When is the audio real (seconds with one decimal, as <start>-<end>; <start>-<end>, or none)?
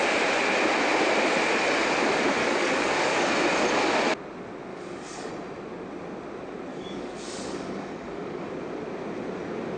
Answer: 0.0-2.4; 3.3-4.7; 5.3-6.7; 8.5-9.8